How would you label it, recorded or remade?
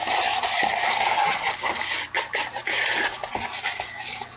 recorded